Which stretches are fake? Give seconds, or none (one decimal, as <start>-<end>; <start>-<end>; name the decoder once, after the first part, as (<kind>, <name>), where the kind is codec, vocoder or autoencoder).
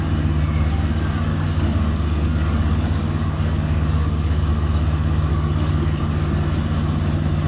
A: 1.3-4.5 (codec, DAC); 5.3-6.0